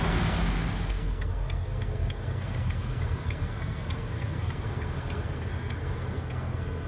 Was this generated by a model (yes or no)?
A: yes